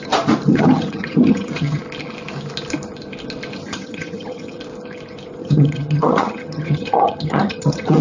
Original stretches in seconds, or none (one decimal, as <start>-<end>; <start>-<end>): 0.0-0.5; 1.8-3.7; 4.6-5.4